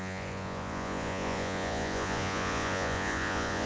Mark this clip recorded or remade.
remade